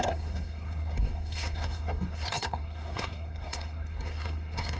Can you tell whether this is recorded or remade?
remade